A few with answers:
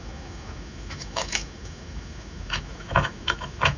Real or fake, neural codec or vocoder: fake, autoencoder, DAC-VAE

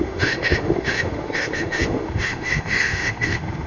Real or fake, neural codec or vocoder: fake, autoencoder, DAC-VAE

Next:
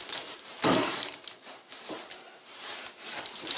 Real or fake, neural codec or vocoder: fake, vocoder, BigVGAN v2